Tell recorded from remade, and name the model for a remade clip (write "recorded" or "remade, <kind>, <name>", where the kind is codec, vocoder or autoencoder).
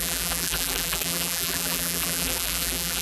remade, vocoder, BigVGAN v2